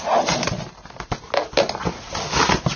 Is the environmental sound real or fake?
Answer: real